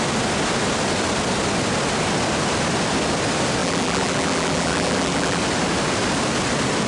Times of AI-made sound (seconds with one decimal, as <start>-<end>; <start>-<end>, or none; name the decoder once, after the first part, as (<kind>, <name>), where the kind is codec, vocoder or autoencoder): 3.6-5.4 (vocoder, BigVGAN v2)